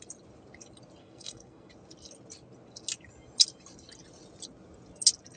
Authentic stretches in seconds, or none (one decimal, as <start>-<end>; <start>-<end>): 0.0-1.0; 1.7-5.4